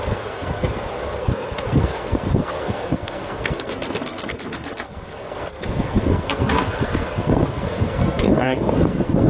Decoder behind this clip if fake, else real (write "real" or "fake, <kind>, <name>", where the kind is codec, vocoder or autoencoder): fake, codec, SNAC